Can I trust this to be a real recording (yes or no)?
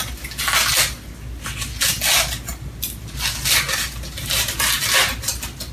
yes